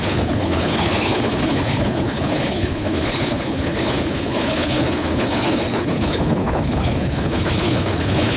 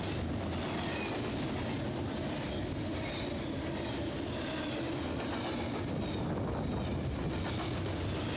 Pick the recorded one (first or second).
second